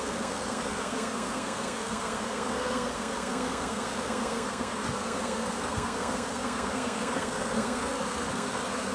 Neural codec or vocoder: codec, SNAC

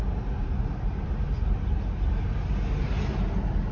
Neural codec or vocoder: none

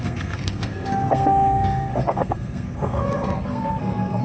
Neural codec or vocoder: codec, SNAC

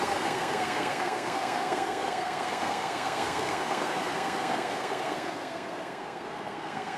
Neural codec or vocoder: codec, SNAC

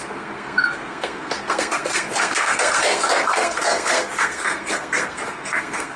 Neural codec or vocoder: codec, SNAC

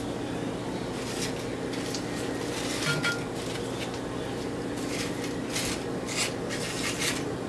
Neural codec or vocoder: none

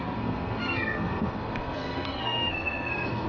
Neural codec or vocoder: codec, SNAC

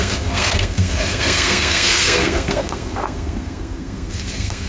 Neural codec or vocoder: codec, SNAC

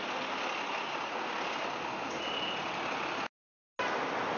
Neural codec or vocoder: none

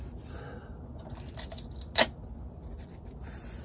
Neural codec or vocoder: none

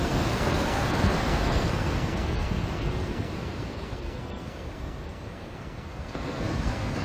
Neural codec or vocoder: codec, SNAC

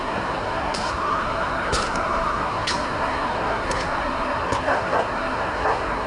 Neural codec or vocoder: codec, SNAC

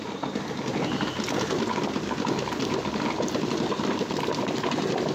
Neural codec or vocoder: none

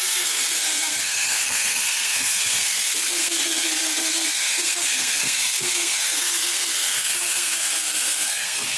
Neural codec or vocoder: codec, SNAC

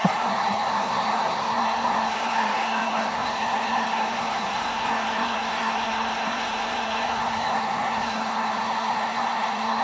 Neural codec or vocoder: codec, SNAC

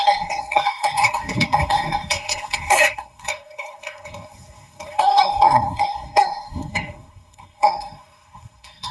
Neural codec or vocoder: codec, SNAC